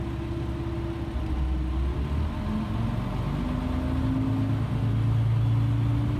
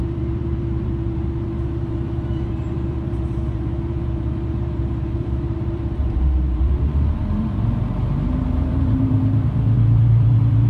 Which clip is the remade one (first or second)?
second